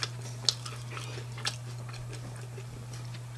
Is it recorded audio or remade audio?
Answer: recorded